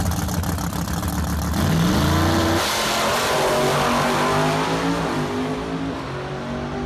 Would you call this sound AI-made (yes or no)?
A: no